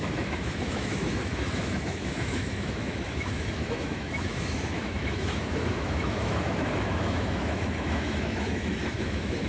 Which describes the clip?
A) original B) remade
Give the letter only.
B